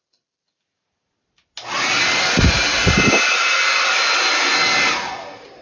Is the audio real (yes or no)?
yes